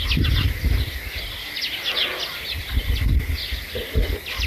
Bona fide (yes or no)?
yes